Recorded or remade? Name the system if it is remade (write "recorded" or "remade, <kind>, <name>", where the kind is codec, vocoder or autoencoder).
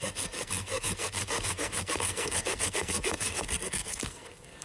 remade, codec, SNAC